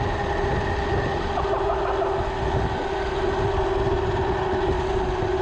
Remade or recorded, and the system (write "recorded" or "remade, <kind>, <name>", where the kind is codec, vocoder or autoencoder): recorded